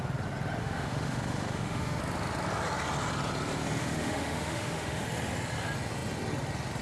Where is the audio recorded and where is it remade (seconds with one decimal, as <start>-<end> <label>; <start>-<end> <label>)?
0.0-0.6 recorded; 0.6-2.0 remade; 2.0-3.8 recorded; 3.8-5.0 remade; 5.0-6.8 recorded